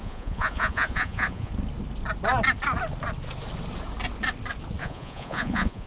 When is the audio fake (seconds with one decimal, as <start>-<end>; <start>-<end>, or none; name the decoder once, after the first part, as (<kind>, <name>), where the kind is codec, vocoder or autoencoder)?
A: 0.0-1.5 (vocoder, Vocos); 4.8-5.9

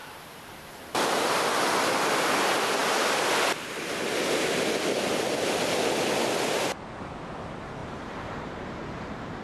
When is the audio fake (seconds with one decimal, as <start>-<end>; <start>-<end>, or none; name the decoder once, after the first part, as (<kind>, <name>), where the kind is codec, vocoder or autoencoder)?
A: 0.0-1.4 (vocoder, BigVGAN v2); 7.8-9.4

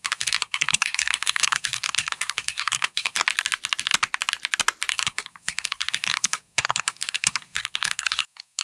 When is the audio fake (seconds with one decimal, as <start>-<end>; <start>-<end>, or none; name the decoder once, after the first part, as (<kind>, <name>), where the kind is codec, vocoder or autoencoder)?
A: 0.0-3.2 (codec, SNAC); 4.9-8.6

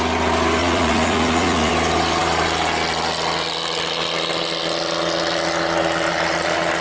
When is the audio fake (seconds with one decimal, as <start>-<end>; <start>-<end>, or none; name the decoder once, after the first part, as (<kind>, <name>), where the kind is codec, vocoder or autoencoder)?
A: 0.6-1.7 (vocoder, Vocos)

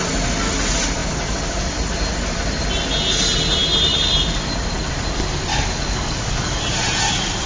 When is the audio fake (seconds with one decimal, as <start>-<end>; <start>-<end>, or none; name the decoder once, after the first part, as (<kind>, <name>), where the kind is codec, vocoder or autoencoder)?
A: 5.5-6.6 (codec, DAC)